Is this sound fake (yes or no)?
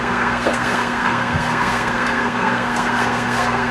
yes